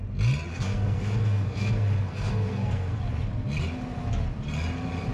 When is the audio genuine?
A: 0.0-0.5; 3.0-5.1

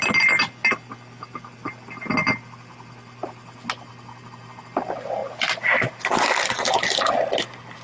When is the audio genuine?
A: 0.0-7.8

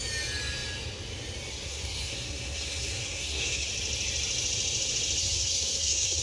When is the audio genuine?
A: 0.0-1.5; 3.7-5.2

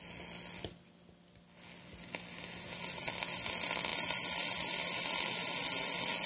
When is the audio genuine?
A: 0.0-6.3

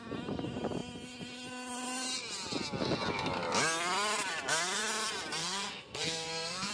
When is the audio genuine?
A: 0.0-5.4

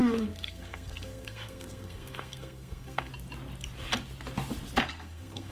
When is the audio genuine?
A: 3.1-4.9